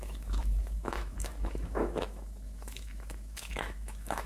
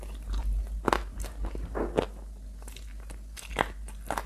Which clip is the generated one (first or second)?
first